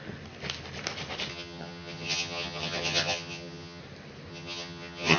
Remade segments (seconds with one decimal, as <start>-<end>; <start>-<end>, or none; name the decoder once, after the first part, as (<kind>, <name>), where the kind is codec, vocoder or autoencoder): 1.3-3.8 (vocoder, HiFi-GAN); 4.3-5.2